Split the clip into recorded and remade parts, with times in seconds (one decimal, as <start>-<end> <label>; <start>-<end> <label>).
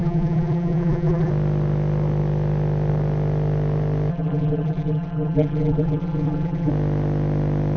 0.0-1.3 remade; 1.3-4.1 recorded; 4.1-6.7 remade; 6.7-7.8 recorded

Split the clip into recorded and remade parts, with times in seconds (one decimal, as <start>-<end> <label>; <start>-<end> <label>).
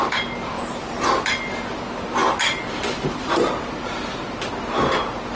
0.0-5.4 recorded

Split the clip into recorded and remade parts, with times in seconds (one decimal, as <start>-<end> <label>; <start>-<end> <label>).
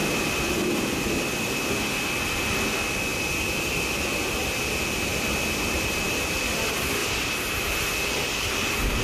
0.0-0.8 remade; 0.8-3.1 recorded; 3.1-3.7 remade; 3.7-5.1 recorded; 5.1-6.4 remade; 6.4-7.0 recorded; 7.0-8.5 remade; 8.5-9.0 recorded